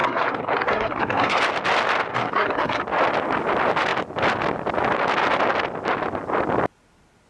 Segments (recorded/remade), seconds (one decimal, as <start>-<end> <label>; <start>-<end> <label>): 0.0-1.4 remade; 1.4-2.1 recorded; 2.1-2.8 remade; 2.8-7.3 recorded